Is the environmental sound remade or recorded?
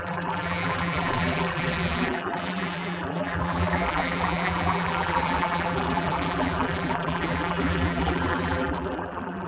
remade